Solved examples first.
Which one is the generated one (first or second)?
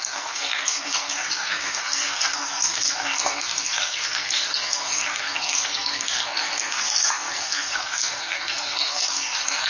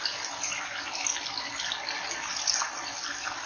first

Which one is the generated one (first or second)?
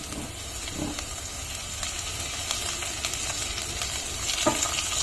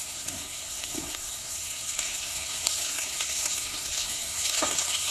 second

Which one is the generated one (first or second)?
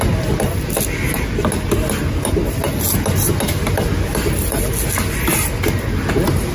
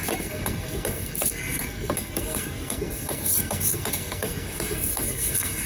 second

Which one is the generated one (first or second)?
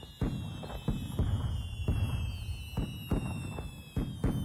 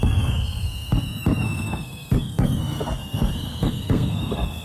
second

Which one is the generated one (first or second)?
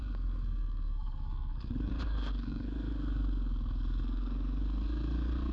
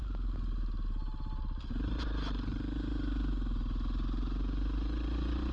first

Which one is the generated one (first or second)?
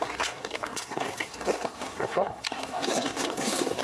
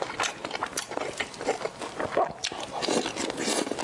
first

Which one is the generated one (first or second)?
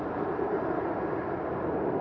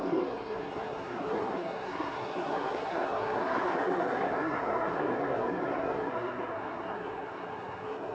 second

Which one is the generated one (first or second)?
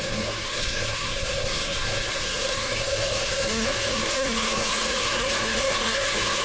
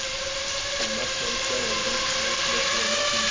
first